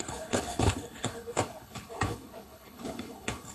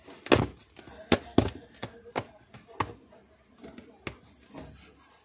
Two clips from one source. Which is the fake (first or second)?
first